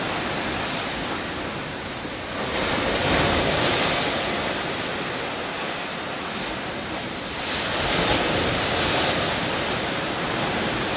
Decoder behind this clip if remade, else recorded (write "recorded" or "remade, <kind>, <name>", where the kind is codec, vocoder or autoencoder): recorded